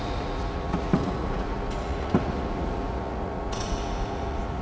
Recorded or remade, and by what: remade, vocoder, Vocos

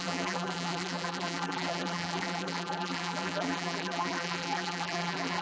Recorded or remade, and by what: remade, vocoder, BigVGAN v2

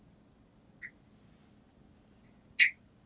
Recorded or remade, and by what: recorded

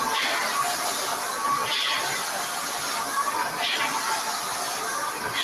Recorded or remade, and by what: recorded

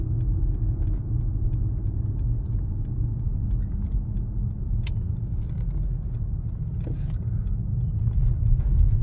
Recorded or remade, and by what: recorded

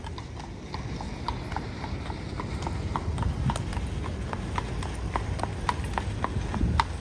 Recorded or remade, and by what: recorded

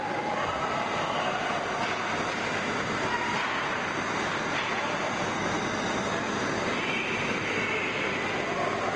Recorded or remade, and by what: recorded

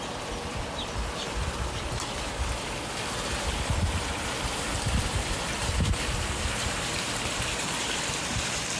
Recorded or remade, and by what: remade, vocoder, BigVGAN v2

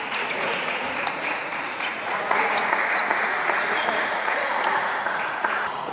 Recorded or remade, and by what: remade, vocoder, Vocos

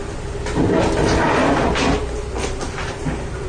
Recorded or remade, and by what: recorded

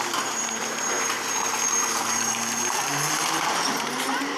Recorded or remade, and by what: remade, vocoder, BigVGAN v2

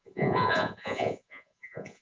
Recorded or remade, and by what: remade, vocoder, Vocos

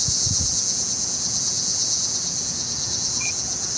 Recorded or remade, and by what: remade, vocoder, Vocos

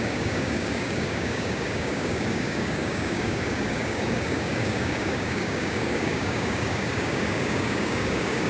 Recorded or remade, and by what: remade, codec, DAC